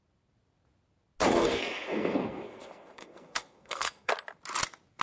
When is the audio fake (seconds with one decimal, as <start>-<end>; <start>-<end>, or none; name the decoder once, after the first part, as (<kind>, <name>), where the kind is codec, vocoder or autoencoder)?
1.2-4.1 (codec, SNAC)